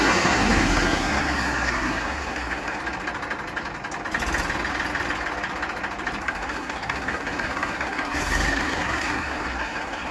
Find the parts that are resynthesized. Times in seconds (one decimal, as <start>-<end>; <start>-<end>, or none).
0.0-2.8; 6.2-10.1